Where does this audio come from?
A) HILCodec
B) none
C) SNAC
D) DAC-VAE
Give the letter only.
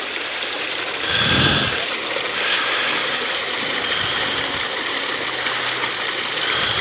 B